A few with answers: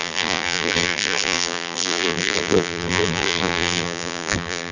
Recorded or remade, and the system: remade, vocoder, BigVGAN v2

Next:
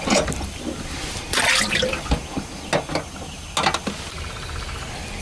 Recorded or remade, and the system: recorded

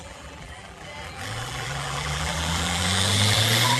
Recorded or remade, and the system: remade, vocoder, BigVGAN v2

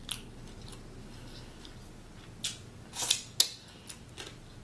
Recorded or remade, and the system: recorded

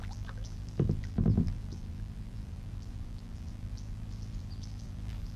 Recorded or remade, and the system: remade, vocoder, BigVGAN v2